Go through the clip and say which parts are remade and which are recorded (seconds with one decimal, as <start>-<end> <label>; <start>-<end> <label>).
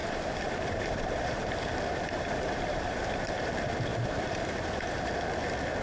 0.0-3.5 remade; 3.5-3.9 recorded; 3.9-5.1 remade; 5.1-5.8 recorded